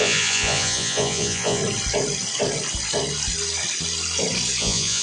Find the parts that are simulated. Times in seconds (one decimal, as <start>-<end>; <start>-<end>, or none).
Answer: 0.0-1.6; 4.6-5.0